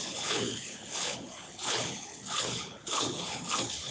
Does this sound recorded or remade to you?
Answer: remade